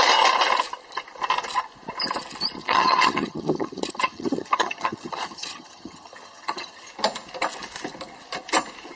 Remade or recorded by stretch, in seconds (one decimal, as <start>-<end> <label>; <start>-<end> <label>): 0.0-2.6 recorded; 2.6-6.9 remade; 6.9-9.0 recorded